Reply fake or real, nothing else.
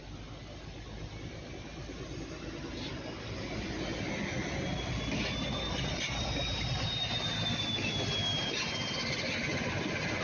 real